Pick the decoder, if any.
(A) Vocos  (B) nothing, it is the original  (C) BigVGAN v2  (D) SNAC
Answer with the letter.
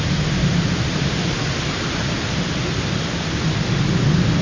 B